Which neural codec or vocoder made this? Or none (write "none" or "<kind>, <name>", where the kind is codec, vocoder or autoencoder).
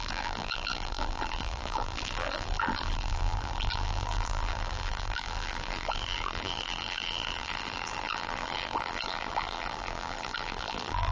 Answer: vocoder, BigVGAN v2